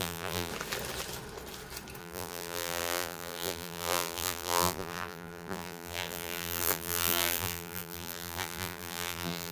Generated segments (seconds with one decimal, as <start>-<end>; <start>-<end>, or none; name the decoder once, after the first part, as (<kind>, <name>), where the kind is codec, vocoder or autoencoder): 0.0-0.5 (vocoder, BigVGAN v2); 2.0-9.5